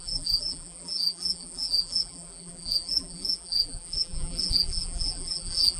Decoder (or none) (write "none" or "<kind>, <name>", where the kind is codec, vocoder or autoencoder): vocoder, BigVGAN v2